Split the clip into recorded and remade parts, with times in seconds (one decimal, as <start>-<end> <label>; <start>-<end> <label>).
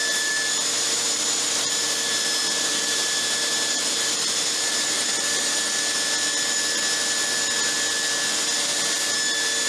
0.0-5.1 remade; 5.1-9.7 recorded